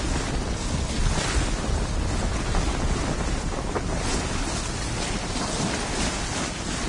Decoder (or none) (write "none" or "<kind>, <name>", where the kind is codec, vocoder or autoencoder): none